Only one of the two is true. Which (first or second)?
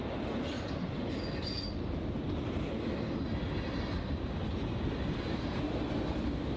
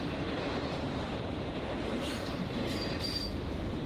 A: first